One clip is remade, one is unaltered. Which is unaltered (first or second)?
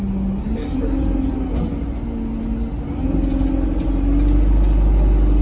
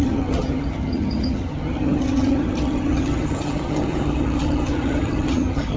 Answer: first